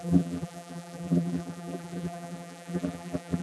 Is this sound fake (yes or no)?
yes